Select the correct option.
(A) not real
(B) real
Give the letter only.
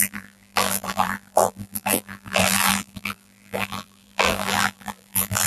A